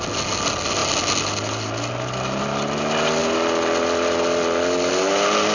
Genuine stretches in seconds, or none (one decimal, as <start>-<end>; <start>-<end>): 0.0-5.5